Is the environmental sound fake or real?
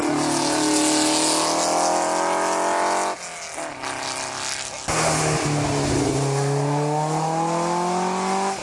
real